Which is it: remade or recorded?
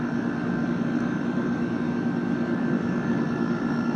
remade